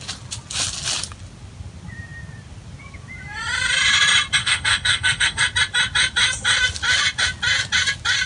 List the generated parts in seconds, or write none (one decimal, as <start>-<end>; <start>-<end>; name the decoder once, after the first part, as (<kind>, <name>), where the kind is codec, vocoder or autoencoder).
4.4-5.4 (codec, SNAC)